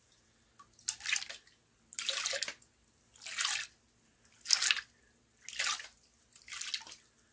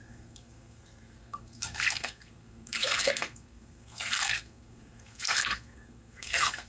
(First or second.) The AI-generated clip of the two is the second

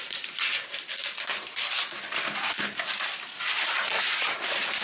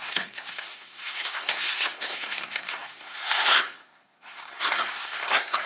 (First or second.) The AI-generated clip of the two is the second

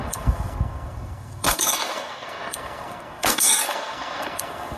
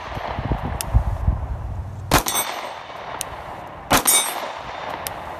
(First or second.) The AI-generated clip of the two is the first